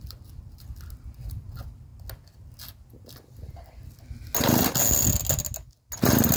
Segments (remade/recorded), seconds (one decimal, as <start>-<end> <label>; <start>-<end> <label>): 0.0-6.4 recorded